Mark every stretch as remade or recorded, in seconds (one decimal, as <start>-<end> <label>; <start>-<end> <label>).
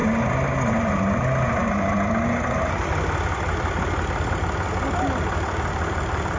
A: 0.0-6.4 recorded